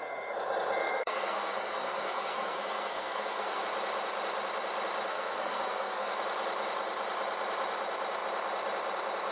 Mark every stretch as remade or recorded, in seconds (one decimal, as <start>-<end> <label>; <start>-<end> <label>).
0.0-0.8 recorded; 0.8-3.6 remade; 3.6-5.1 recorded; 5.1-6.2 remade; 6.2-9.3 recorded